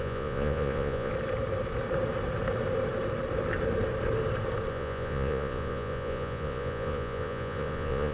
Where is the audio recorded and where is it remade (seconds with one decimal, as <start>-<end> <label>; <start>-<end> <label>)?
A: 0.0-1.1 remade; 1.1-4.7 recorded; 4.7-8.1 remade